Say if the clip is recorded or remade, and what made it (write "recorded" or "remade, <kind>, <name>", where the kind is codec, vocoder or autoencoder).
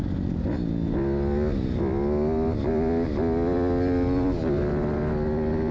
recorded